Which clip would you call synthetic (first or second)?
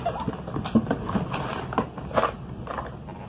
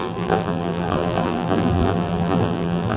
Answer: second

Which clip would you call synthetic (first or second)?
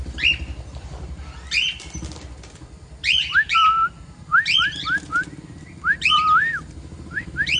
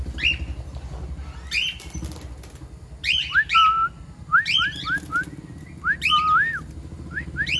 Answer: first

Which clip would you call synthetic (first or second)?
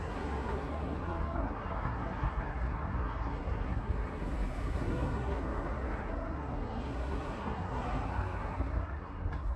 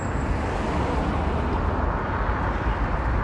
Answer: first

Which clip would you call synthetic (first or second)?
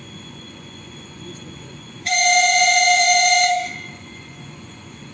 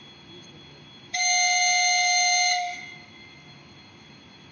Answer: first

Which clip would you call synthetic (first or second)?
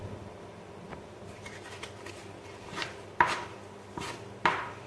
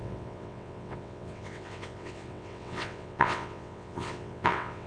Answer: second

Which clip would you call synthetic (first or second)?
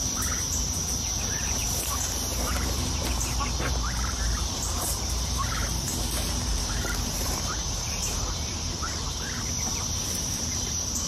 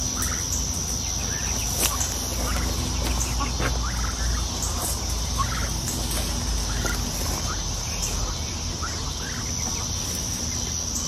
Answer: first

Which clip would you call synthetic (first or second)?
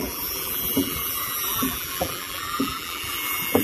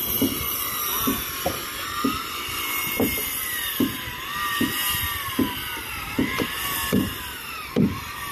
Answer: first